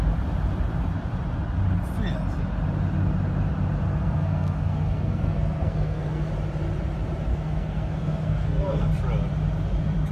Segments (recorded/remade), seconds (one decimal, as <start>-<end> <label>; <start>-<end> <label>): 0.0-3.9 recorded; 3.9-6.3 remade; 6.3-7.3 recorded; 7.3-8.9 remade; 8.9-10.1 recorded